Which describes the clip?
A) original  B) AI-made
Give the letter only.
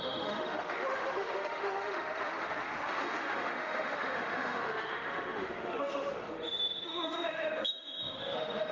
B